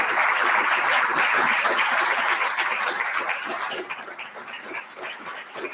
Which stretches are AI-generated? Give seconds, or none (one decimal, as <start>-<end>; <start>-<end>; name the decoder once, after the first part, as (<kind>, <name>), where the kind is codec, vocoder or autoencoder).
none